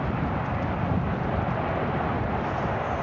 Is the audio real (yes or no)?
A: yes